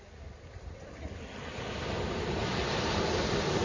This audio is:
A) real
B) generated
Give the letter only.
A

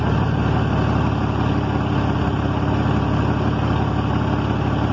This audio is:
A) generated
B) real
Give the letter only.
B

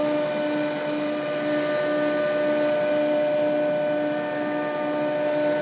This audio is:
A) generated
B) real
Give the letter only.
B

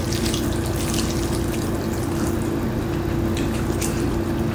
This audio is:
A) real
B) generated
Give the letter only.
A